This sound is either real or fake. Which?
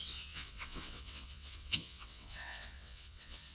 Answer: fake